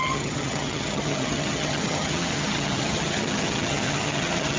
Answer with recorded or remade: remade